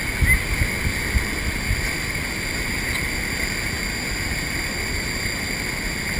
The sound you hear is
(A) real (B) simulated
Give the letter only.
A